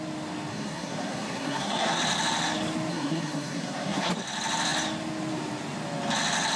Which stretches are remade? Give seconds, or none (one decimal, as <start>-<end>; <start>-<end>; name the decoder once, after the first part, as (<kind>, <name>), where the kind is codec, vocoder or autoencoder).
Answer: 0.5-2.0 (codec, SNAC); 2.9-4.1